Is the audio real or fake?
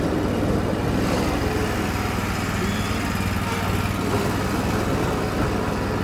real